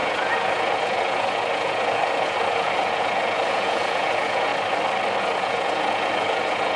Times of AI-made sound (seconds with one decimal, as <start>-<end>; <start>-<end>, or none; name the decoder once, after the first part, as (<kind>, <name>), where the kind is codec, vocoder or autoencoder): 0.0-4.5 (vocoder, Vocos); 5.2-6.8